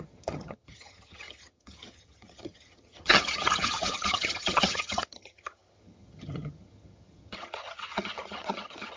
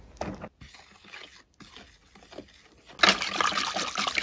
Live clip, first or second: second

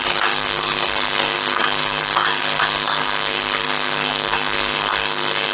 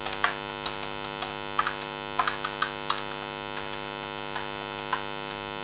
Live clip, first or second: second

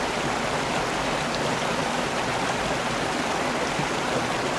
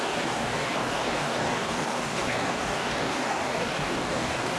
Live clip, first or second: first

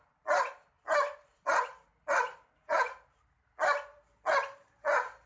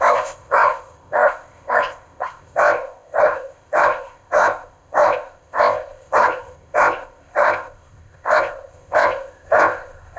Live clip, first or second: first